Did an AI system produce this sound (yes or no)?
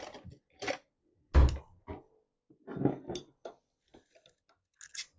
no